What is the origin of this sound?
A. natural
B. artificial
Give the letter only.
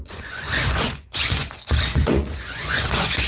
B